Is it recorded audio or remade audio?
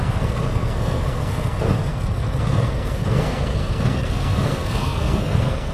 remade